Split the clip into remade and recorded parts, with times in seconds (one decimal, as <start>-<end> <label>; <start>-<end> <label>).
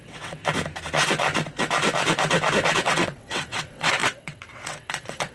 0.0-0.4 remade; 0.4-2.8 recorded; 2.8-5.3 remade